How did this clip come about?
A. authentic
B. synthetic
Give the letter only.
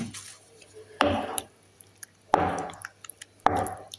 A